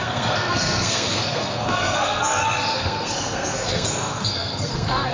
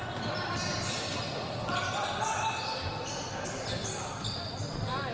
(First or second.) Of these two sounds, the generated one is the first